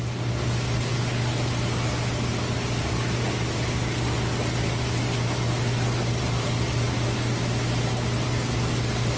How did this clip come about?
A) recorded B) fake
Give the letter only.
A